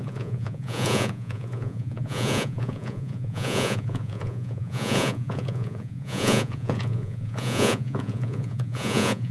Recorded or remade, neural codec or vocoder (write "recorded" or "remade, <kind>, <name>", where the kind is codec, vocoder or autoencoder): remade, vocoder, Vocos